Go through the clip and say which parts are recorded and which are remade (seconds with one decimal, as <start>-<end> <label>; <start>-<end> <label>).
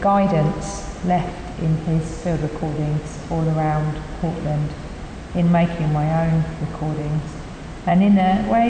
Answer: 0.0-8.7 recorded